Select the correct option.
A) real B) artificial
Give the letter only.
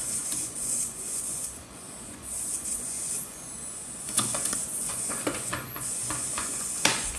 B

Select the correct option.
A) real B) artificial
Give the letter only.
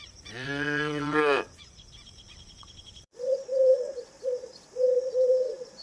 B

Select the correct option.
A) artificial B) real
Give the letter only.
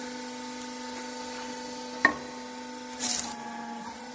B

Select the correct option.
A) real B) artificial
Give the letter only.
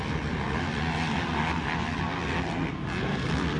A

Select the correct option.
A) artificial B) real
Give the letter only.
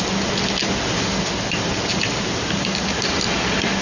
B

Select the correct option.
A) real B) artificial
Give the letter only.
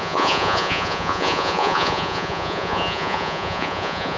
B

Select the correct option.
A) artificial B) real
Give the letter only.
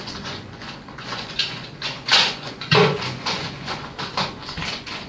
A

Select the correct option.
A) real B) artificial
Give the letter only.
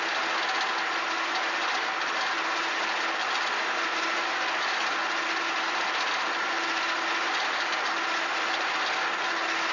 A